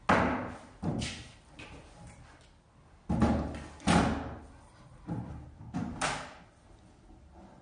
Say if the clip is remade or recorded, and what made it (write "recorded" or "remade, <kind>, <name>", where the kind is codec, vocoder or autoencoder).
recorded